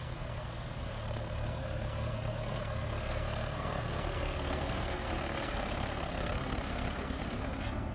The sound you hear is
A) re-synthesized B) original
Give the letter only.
A